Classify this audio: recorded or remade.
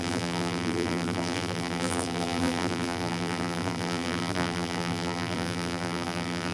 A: remade